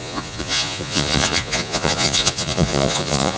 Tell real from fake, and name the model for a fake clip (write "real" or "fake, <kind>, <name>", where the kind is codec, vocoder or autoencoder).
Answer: fake, vocoder, Vocos